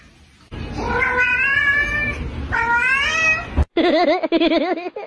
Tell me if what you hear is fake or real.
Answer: real